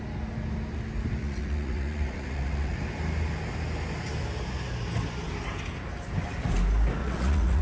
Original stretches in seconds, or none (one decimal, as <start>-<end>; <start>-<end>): 0.0-1.2; 2.8-7.0